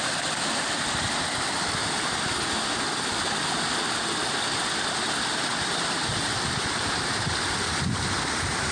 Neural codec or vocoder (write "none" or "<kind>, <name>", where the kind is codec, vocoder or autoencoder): none